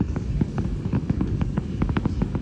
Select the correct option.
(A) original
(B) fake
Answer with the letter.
B